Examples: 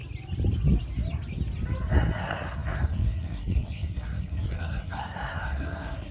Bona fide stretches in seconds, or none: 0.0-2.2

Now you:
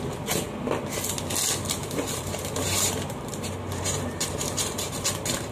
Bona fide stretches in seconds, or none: 0.0-1.8; 5.1-5.5

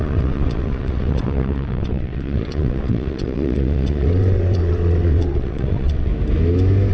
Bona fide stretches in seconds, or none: 6.1-6.9

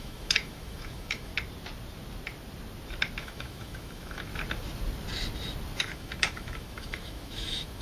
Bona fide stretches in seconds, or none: 1.3-3.2; 4.3-5.8

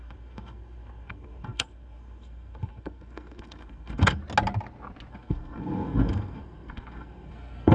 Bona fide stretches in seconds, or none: 4.2-5.1